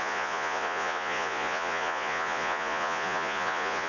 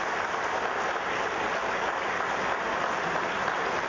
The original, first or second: second